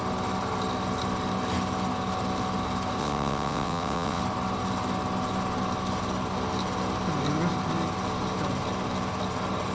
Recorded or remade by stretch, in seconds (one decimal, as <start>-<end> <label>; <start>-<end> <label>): 0.0-3.0 recorded; 3.0-4.2 remade; 4.2-9.7 recorded